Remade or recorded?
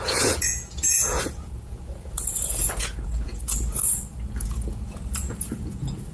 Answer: remade